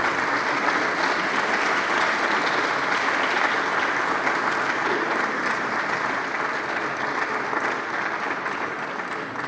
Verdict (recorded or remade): recorded